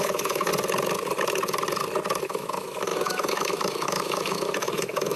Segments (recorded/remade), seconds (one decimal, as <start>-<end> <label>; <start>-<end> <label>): 0.0-0.5 remade; 0.5-2.2 recorded; 2.2-5.2 remade